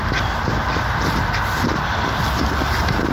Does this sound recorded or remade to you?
recorded